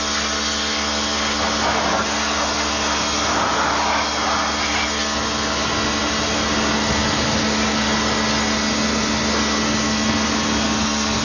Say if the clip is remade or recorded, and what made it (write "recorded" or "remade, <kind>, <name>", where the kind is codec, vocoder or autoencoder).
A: recorded